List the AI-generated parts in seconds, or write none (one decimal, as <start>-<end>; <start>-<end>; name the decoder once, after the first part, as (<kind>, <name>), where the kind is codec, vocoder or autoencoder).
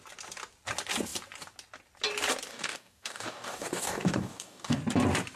2.5-4.8 (codec, DAC)